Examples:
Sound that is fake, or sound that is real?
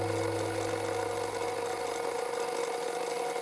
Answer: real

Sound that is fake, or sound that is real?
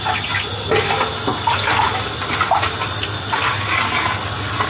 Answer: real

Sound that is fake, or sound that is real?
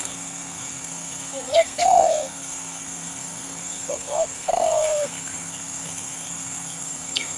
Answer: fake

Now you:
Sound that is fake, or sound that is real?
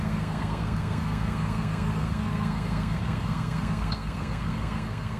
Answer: fake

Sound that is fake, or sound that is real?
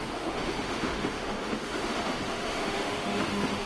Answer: fake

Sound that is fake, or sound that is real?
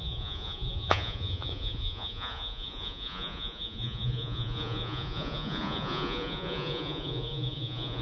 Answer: fake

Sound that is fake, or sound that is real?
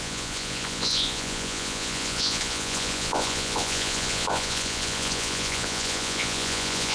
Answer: fake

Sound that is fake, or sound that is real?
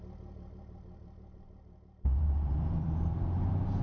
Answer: fake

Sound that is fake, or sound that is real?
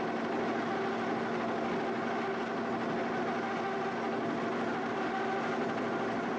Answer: real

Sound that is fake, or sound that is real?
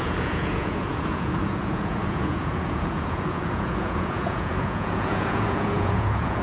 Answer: fake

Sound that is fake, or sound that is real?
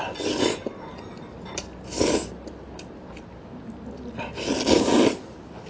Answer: real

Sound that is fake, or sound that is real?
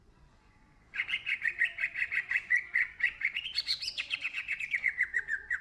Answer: fake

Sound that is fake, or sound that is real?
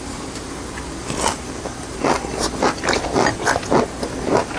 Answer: real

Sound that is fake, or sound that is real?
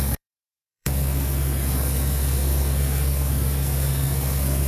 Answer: fake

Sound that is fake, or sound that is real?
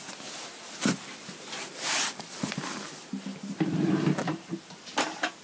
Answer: real